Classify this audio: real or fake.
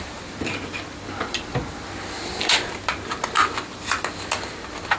real